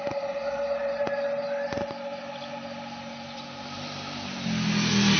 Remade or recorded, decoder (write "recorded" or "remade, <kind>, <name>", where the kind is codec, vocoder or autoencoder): recorded